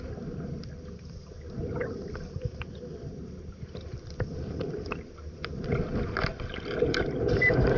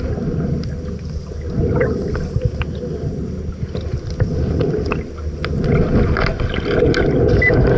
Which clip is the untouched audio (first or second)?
second